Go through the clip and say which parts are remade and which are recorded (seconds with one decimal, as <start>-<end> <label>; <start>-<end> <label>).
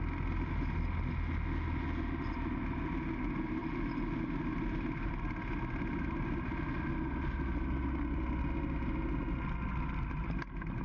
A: 0.0-10.8 recorded